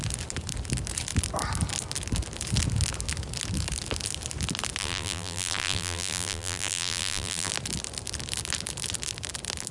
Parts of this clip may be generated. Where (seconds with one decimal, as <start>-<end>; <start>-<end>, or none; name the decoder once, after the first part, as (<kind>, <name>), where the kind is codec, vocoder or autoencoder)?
4.8-7.5 (vocoder, BigVGAN v2)